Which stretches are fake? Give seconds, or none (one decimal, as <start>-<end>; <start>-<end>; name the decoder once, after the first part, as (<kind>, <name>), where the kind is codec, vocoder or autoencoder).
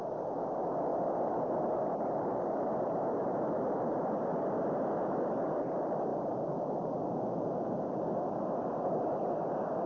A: 0.0-6.1 (vocoder, BigVGAN v2); 8.3-9.9